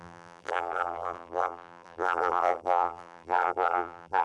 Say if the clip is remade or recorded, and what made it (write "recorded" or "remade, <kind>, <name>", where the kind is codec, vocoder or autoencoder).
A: remade, vocoder, BigVGAN v2